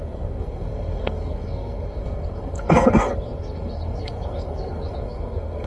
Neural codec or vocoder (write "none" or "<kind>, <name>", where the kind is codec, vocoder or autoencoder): codec, SNAC